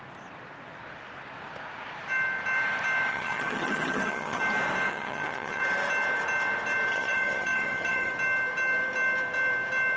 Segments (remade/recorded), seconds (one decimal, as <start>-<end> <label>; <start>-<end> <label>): 0.0-3.1 recorded; 3.1-4.4 remade; 4.4-4.9 recorded; 4.9-5.6 remade; 5.6-6.9 recorded; 6.9-8.1 remade; 8.1-10.0 recorded